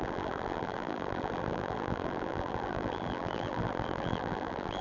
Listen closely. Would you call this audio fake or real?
fake